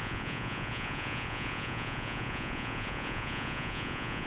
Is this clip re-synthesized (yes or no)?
yes